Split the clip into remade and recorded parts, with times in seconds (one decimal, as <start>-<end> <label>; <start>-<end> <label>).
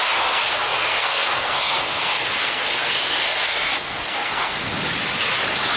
0.0-4.7 remade; 4.7-5.8 recorded